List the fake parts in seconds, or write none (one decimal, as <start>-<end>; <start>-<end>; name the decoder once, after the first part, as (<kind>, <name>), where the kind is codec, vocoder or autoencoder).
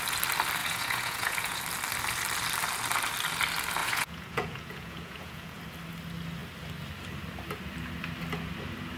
0.6-1.6 (vocoder, Vocos); 3.8-5.6